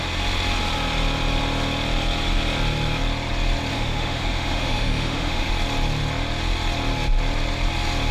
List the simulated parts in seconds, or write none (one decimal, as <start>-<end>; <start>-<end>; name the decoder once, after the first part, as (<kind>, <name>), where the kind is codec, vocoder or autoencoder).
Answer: 3.7-5.5 (autoencoder, DAC-VAE)